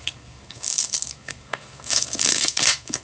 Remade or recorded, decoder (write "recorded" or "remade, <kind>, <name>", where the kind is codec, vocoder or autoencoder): remade, codec, SNAC